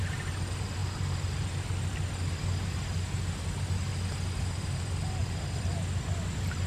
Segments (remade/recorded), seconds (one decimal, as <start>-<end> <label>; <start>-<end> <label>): 0.0-5.2 recorded; 5.2-5.9 remade; 5.9-6.7 recorded